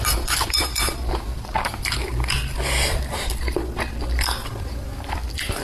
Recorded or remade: remade